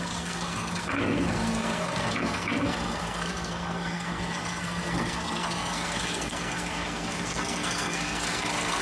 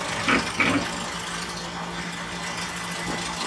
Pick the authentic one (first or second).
second